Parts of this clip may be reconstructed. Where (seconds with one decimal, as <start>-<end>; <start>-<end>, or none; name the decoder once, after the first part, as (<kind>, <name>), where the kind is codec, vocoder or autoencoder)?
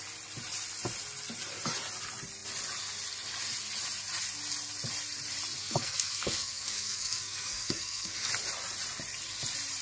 5.6-8.3 (codec, SNAC)